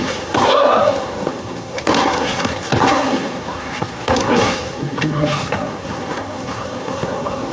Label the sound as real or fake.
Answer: fake